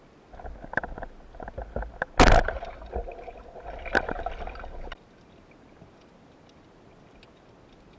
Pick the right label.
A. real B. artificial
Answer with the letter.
A